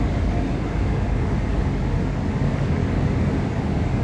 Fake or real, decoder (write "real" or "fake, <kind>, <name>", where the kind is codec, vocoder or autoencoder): fake, codec, DAC